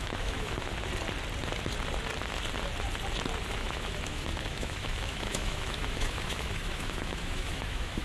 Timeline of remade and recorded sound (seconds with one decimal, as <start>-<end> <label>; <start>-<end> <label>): 0.0-0.7 remade; 0.7-3.5 recorded; 3.5-8.0 remade